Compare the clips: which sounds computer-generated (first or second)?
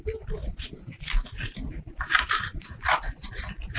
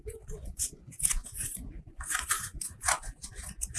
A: second